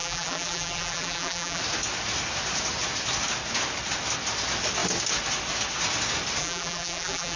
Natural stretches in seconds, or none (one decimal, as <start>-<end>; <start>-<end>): 1.6-6.4